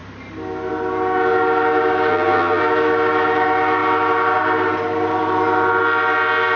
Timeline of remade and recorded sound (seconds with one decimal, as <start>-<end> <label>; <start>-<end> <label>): 0.0-2.1 recorded; 2.1-2.6 remade; 2.6-6.6 recorded